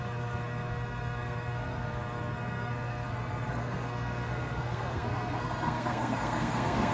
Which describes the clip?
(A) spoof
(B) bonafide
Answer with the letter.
A